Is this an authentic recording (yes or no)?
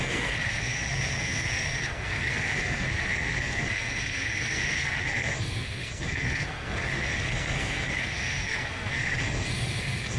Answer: no